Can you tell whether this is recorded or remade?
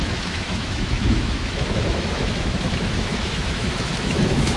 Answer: remade